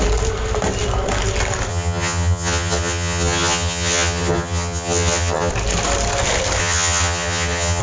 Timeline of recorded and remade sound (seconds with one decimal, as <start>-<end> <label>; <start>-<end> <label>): 0.0-1.7 recorded; 1.7-5.5 remade; 5.5-6.6 recorded; 6.6-7.8 remade